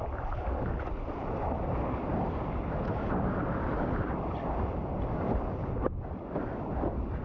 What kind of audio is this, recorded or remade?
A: recorded